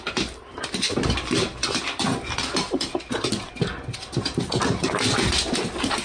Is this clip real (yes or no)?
yes